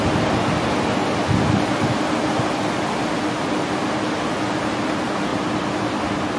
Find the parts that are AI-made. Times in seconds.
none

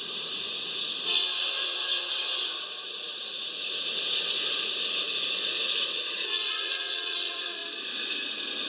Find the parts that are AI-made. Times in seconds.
0.0-7.6 (vocoder, Vocos)